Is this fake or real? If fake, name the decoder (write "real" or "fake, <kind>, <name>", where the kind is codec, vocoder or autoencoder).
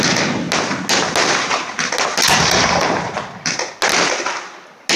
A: real